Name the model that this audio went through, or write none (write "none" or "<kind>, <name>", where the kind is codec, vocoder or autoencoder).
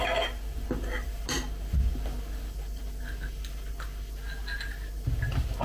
none